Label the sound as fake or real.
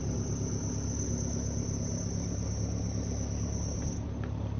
real